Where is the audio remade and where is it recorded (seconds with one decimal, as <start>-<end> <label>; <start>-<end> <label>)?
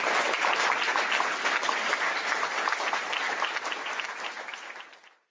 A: 0.0-5.3 recorded